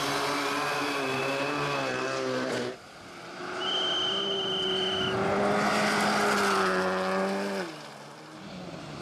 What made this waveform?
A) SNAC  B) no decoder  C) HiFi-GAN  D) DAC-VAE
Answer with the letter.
B